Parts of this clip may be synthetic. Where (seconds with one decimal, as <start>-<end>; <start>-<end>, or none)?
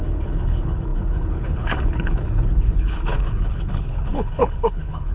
0.0-5.1